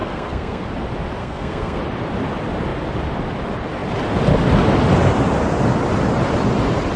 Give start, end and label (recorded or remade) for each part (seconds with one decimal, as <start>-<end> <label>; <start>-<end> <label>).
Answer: 0.0-0.7 remade; 0.7-1.2 recorded; 1.2-1.8 remade; 1.8-7.0 recorded